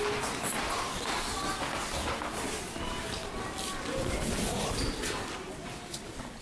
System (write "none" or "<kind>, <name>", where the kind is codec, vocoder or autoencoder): none